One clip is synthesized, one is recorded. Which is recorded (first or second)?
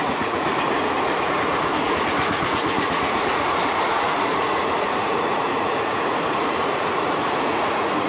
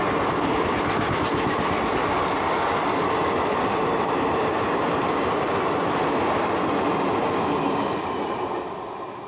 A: second